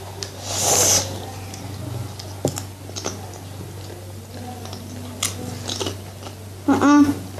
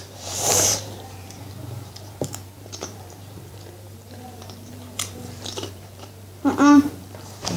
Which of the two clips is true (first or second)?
first